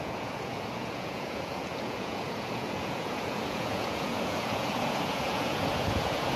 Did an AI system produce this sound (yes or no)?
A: yes